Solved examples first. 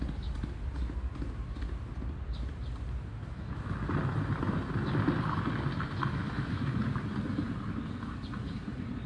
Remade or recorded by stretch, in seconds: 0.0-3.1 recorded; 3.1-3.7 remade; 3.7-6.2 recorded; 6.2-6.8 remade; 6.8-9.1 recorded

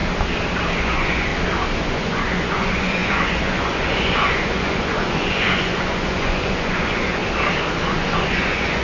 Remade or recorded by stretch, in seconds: 0.0-0.8 recorded; 0.8-1.3 remade; 1.3-1.8 recorded; 1.8-7.2 remade; 7.2-7.8 recorded; 7.8-8.8 remade

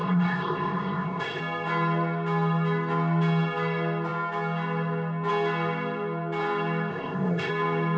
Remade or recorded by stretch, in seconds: 0.0-1.4 remade; 1.4-6.9 recorded; 6.9-7.5 remade; 7.5-8.0 recorded